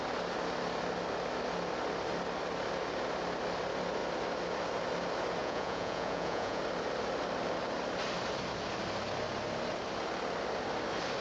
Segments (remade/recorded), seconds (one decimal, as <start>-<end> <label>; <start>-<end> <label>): 0.0-5.4 recorded; 5.4-6.6 remade; 6.6-11.2 recorded